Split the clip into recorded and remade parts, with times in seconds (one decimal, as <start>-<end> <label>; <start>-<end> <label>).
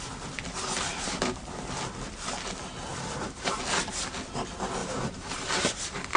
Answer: 0.0-2.9 recorded; 2.9-3.6 remade; 3.6-4.8 recorded; 4.8-5.8 remade; 5.8-6.2 recorded